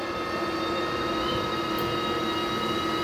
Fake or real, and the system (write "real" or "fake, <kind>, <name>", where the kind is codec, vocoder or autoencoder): real